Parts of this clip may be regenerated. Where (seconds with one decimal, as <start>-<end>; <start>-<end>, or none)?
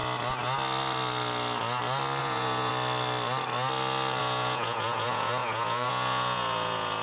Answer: 2.2-2.7; 4.2-7.0